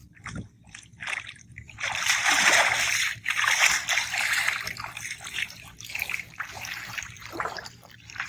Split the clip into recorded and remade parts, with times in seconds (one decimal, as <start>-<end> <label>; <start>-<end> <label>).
0.0-1.2 recorded; 1.2-2.2 remade; 2.2-5.3 recorded; 5.3-8.3 remade